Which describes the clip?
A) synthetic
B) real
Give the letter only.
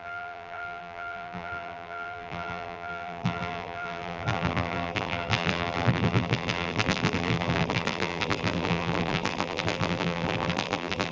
A